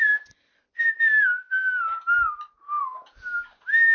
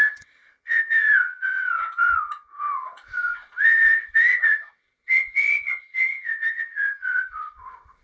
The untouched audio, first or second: first